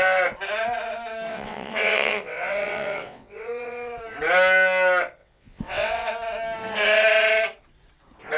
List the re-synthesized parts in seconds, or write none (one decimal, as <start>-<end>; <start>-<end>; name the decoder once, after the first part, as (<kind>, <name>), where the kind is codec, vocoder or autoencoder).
1.3-4.0 (vocoder, WaveNeXt); 5.2-6.1